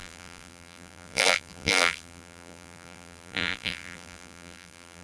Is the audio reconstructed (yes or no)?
yes